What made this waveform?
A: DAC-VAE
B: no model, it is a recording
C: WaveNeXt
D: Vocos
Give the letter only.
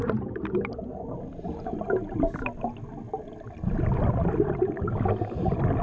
B